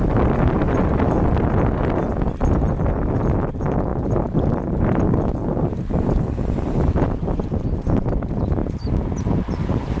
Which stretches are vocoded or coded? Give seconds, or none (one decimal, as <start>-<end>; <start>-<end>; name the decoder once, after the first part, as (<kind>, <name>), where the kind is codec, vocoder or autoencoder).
none